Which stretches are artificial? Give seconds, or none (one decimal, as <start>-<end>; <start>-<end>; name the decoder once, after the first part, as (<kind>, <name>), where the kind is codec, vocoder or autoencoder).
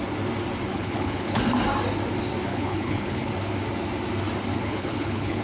0.7-1.4 (codec, HILCodec); 2.5-3.3; 4.5-5.4